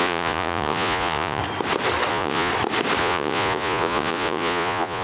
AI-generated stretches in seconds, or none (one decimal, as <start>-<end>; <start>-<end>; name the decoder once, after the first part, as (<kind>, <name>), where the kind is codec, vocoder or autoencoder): 0.0-1.4 (vocoder, Vocos); 2.1-2.5; 3.0-5.0